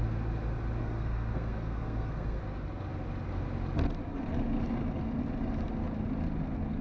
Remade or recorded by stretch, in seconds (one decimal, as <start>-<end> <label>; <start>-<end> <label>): 0.0-0.8 recorded; 0.8-2.4 remade; 2.4-6.8 recorded